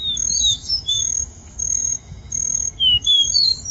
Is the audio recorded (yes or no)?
no